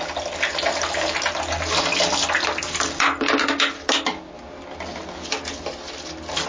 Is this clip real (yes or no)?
yes